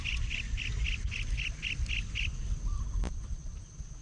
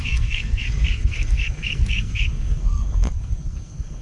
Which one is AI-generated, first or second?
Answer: second